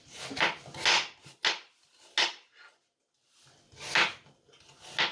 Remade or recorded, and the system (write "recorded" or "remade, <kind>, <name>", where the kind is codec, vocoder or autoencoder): recorded